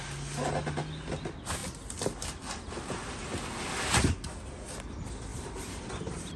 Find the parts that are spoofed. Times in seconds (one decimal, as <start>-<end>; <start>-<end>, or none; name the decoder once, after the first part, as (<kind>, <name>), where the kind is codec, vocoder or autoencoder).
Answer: 5.3-6.4 (vocoder, BigVGAN v2)